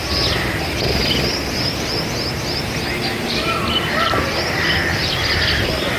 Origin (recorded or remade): recorded